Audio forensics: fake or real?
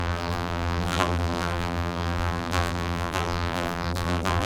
fake